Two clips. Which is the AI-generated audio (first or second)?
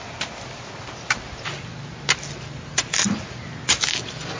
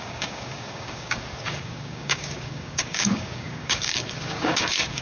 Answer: second